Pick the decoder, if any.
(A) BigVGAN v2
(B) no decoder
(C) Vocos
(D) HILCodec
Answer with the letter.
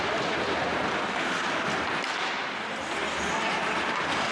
B